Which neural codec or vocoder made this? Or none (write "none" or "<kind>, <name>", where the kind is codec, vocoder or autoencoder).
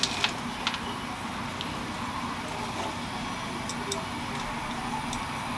none